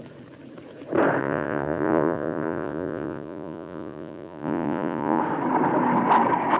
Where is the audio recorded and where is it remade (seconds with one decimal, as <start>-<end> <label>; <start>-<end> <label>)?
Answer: 0.0-1.2 recorded; 1.2-5.2 remade; 5.2-6.6 recorded